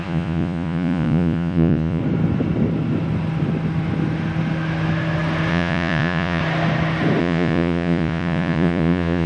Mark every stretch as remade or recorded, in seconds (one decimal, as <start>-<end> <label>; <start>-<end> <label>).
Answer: 0.0-2.0 remade; 2.0-5.5 recorded; 5.5-6.4 remade; 6.4-7.2 recorded; 7.2-9.3 remade